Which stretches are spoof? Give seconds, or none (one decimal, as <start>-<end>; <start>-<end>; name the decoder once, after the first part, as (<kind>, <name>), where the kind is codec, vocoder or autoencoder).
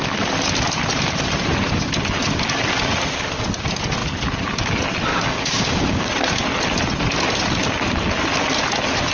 5.1-6.1 (codec, DAC)